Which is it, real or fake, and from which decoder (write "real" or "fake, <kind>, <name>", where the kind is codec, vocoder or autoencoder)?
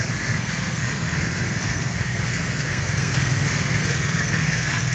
fake, codec, SNAC